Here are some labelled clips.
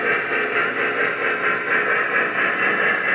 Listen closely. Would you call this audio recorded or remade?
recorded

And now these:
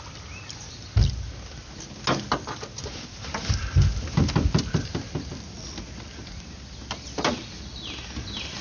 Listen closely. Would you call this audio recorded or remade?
recorded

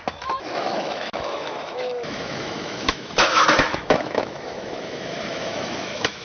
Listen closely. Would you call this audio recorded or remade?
remade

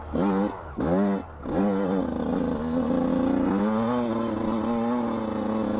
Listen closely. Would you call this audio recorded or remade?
recorded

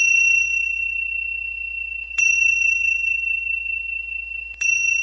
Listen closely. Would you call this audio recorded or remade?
remade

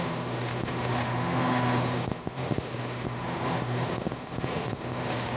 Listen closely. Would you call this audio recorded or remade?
remade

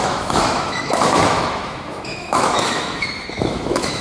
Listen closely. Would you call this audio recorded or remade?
remade